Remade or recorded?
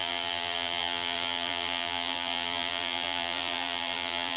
remade